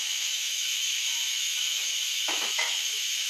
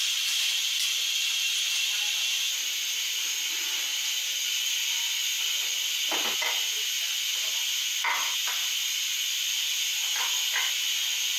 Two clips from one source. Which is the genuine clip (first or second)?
second